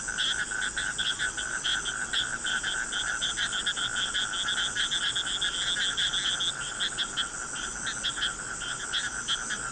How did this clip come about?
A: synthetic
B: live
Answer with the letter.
B